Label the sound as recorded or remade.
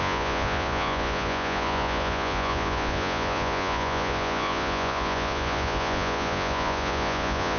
remade